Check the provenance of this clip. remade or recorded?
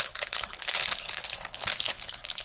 remade